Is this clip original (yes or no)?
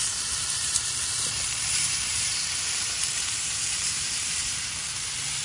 no